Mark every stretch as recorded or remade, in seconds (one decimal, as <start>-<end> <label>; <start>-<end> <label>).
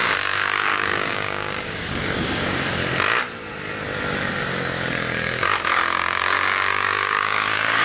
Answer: 0.0-2.8 remade; 2.8-4.0 recorded; 4.0-7.8 remade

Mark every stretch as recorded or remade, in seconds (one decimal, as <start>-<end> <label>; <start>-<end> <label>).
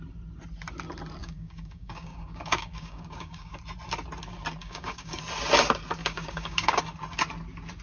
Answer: 0.0-1.2 recorded; 1.2-3.6 remade; 3.6-4.6 recorded; 4.6-5.2 remade; 5.2-6.0 recorded; 6.0-6.8 remade; 6.8-7.8 recorded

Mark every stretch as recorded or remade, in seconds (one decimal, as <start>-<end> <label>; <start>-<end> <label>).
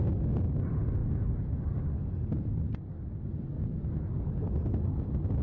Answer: 0.0-5.4 recorded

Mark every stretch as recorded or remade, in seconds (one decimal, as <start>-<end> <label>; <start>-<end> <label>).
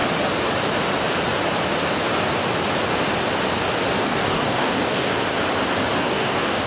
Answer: 0.0-4.0 recorded; 4.0-5.1 remade; 5.1-6.0 recorded; 6.0-6.7 remade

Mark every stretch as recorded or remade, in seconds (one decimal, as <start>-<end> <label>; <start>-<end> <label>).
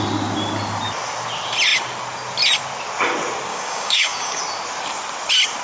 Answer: 0.0-3.5 recorded; 3.5-4.4 remade; 4.4-5.6 recorded